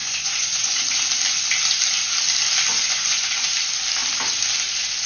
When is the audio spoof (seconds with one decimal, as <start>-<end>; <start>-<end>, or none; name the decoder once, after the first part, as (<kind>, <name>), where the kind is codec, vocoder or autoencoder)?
0.0-0.8 (vocoder, Vocos); 2.7-3.5

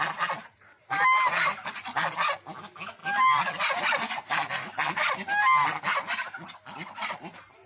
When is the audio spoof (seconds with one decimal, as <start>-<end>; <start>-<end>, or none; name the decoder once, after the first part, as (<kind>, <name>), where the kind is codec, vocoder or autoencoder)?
none